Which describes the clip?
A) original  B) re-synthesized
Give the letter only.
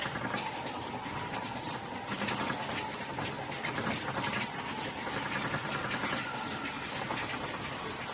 A